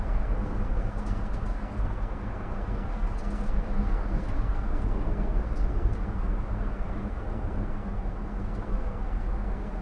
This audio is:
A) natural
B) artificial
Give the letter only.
B